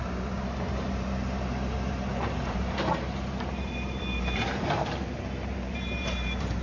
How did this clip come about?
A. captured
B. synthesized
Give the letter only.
B